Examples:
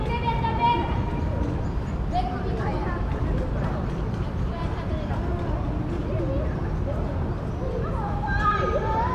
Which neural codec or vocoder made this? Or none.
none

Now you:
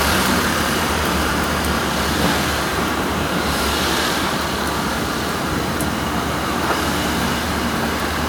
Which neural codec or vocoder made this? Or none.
vocoder, BigVGAN v2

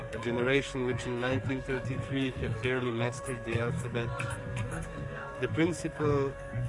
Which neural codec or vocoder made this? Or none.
codec, SNAC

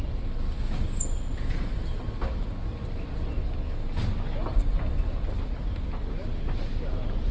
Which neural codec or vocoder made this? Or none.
none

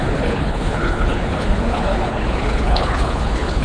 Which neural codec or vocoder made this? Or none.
codec, HILCodec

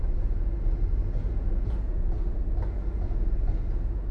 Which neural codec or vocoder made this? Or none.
vocoder, Vocos